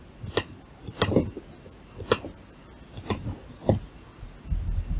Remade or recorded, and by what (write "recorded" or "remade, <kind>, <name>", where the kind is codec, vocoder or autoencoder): recorded